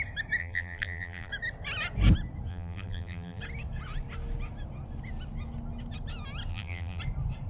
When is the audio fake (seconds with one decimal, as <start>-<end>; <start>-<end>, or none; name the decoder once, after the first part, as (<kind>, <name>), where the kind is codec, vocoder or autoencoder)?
0.4-1.3 (vocoder, BigVGAN v2); 2.5-3.4; 6.5-7.0